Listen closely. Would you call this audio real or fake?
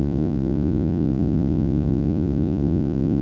fake